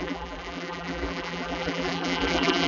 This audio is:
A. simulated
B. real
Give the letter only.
A